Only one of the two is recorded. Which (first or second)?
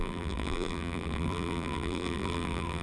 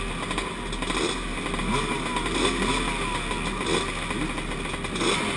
second